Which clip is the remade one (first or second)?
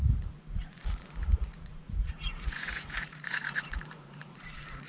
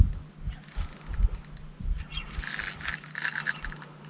first